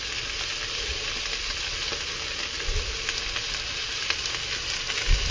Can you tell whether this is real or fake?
real